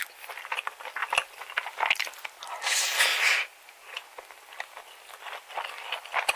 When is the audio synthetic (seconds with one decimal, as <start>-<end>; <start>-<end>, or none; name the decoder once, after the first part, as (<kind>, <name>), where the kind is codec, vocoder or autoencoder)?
none